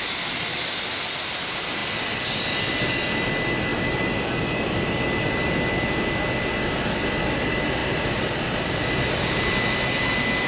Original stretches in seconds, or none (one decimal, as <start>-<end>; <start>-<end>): 0.0-3.7; 4.4-7.8; 10.0-10.5